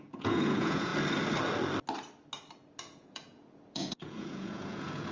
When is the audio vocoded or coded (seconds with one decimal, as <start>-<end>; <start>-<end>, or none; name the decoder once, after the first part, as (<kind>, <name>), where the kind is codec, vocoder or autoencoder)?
0.0-0.9 (vocoder, Vocos); 2.8-5.1